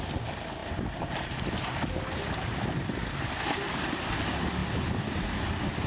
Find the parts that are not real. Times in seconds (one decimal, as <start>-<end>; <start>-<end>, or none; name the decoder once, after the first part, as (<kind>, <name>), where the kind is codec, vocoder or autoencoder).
0.6-4.1 (vocoder, BigVGAN v2)